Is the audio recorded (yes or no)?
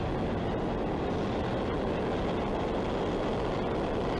yes